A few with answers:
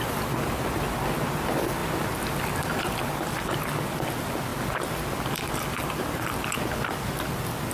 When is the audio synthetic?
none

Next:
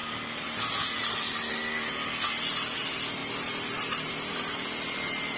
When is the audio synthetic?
3.2-4.1 (vocoder, BigVGAN v2)

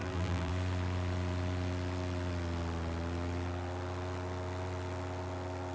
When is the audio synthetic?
0.0-0.5 (vocoder, BigVGAN v2)

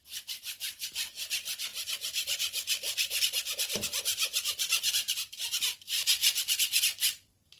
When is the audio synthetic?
0.0-0.9 (vocoder, BigVGAN v2); 1.7-3.2; 4.1-6.8

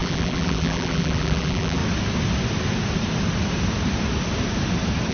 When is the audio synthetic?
0.0-1.8 (vocoder, BigVGAN v2)

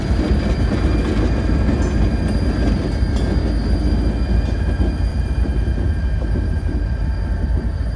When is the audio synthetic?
5.1-8.0 (vocoder, BigVGAN v2)

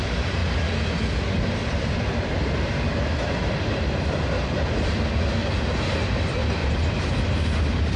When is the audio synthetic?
1.6-4.2 (vocoder, BigVGAN v2); 6.6-7.2

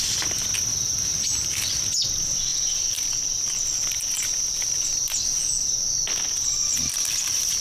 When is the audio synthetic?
0.7-1.8 (vocoder, BigVGAN v2); 6.7-7.6